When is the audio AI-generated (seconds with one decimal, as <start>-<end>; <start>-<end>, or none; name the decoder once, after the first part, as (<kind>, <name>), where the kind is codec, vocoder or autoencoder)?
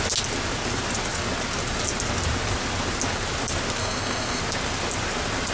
3.8-4.4 (codec, SNAC)